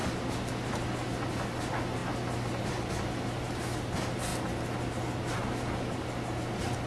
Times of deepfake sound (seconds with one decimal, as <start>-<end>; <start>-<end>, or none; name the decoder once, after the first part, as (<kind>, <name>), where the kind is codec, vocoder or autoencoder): none

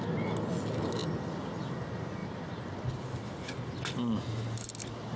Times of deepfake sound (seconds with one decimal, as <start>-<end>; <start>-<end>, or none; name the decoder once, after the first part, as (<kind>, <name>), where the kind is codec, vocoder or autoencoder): none

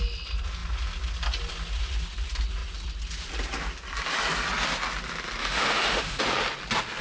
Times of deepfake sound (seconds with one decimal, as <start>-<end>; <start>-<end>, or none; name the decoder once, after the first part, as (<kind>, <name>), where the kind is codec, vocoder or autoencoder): 5.4-6.2 (autoencoder, DAC-VAE)